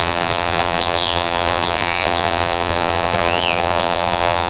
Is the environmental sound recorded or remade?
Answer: remade